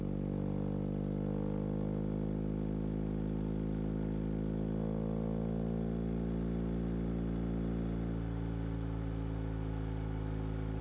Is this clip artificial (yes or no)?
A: no